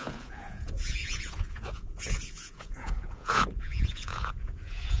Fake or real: fake